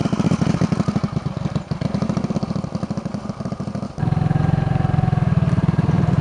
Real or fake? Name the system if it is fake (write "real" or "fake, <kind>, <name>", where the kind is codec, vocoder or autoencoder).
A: real